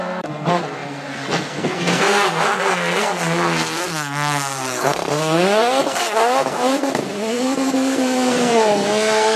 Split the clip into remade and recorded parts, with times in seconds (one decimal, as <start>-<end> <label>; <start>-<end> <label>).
0.0-9.4 remade